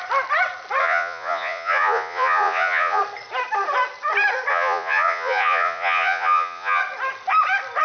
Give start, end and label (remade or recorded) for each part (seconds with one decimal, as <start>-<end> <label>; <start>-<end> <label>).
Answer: 0.0-0.8 recorded; 0.8-3.0 remade; 3.0-4.5 recorded; 4.5-6.8 remade; 6.8-7.8 recorded